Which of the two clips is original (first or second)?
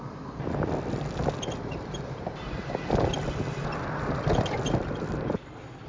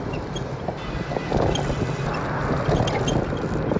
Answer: second